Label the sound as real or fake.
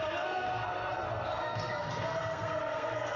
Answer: fake